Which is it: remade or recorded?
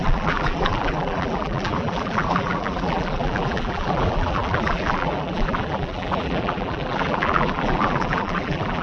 remade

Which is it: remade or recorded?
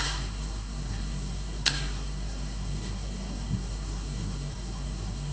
remade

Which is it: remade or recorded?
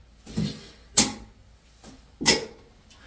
recorded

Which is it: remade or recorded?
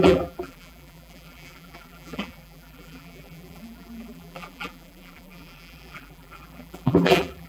remade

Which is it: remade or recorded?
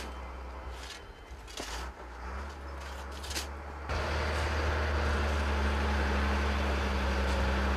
recorded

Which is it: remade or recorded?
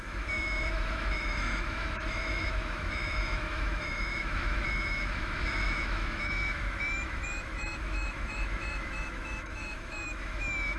remade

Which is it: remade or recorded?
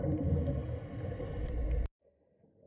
recorded